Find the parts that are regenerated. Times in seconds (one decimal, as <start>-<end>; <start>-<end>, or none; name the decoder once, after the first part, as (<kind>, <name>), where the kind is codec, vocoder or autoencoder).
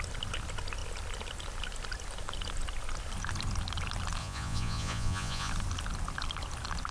4.2-5.5 (vocoder, Vocos)